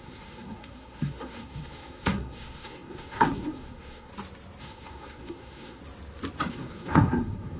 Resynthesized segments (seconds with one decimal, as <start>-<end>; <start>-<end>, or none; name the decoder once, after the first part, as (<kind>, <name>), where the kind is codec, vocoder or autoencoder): 0.0-4.1 (codec, SNAC); 4.6-5.8; 6.5-7.6